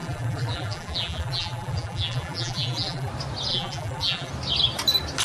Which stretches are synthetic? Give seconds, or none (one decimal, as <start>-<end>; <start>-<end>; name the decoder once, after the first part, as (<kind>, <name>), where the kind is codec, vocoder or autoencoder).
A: 0.0-3.1 (vocoder, BigVGAN v2); 3.5-4.3